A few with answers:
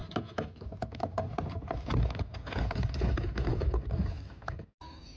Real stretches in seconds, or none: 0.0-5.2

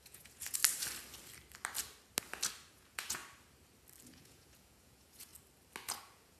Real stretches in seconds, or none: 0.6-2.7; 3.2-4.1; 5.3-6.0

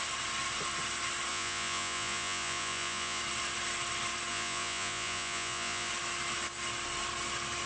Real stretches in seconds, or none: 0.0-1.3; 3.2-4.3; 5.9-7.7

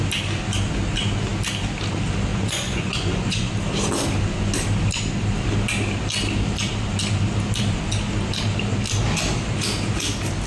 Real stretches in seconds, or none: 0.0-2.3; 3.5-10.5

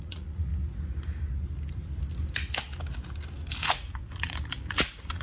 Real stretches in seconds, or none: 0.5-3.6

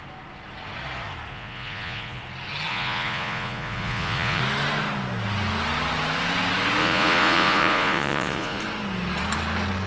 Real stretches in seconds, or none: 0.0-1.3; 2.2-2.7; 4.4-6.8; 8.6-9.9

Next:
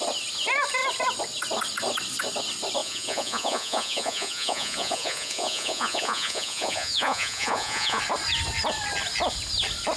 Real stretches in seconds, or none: 0.0-2.8; 8.0-10.0